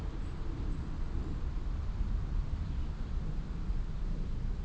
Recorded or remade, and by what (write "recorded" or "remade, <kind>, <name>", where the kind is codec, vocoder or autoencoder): recorded